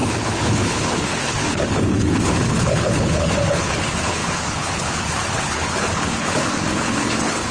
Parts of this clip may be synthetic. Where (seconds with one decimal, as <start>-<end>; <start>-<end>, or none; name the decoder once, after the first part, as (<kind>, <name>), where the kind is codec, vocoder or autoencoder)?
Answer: 0.0-7.5 (codec, HILCodec)

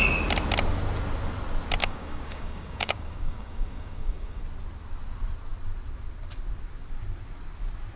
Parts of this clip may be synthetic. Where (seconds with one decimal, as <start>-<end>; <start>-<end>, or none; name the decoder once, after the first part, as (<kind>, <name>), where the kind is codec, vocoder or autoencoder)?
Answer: 1.8-4.4 (codec, DAC)